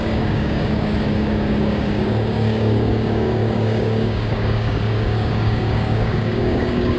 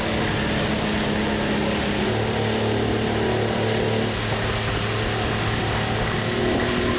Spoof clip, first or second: first